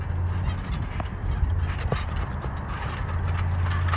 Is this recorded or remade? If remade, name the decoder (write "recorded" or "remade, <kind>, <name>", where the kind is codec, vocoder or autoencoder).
recorded